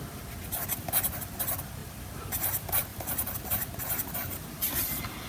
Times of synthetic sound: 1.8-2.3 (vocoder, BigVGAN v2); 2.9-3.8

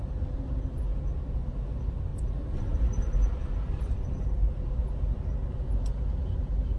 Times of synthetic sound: 0.9-1.5 (vocoder, BigVGAN v2); 2.1-3.8

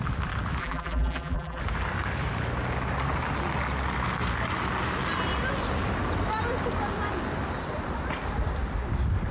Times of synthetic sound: 0.6-1.6 (vocoder, BigVGAN v2)

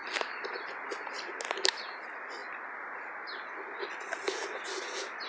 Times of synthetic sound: none

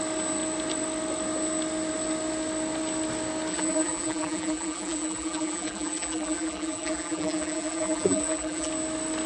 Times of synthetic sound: 3.5-8.7 (vocoder, BigVGAN v2)